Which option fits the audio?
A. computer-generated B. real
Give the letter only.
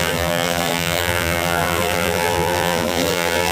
A